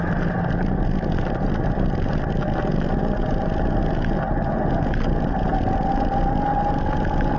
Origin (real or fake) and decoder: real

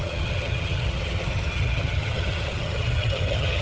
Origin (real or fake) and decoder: fake, vocoder, HiFi-GAN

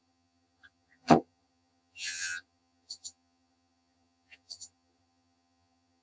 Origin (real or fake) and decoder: fake, vocoder, HiFi-GAN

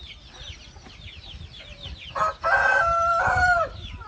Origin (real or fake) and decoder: real